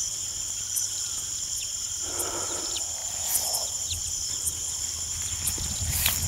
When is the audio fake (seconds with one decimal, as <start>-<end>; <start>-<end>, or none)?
0.0-6.3